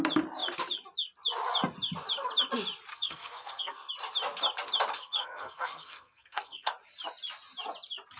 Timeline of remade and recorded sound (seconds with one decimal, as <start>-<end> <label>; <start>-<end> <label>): 0.0-2.9 recorded; 2.9-3.9 remade; 3.9-4.9 recorded; 4.9-6.7 remade; 6.7-8.2 recorded